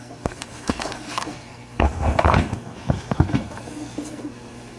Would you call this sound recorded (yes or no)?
no